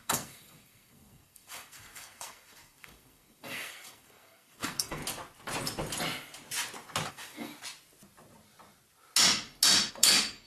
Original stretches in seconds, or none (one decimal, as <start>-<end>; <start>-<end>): 5.0-7.1; 7.5-9.9